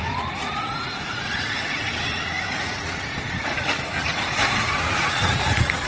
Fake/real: fake